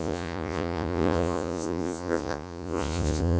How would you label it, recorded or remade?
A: remade